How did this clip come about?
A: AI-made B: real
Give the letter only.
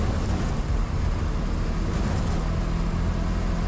B